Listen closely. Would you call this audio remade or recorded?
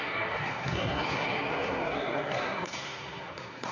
remade